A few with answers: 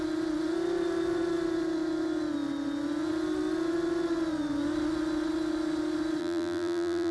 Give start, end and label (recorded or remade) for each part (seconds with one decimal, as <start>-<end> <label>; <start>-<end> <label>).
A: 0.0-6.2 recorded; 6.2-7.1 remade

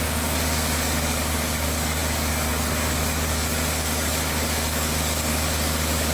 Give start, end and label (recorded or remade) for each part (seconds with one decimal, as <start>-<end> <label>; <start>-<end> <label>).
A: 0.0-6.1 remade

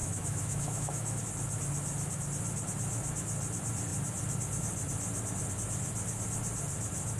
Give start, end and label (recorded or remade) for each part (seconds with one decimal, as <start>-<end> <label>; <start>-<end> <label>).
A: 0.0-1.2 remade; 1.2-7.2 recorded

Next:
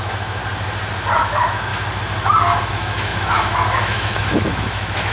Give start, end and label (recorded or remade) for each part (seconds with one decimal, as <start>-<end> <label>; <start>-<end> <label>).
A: 0.0-0.4 remade; 0.4-1.2 recorded; 1.2-1.7 remade; 1.7-2.7 recorded; 2.7-5.1 remade